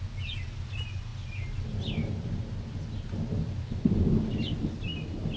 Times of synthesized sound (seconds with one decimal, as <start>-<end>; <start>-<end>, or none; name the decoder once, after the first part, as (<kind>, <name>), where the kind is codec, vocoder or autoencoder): none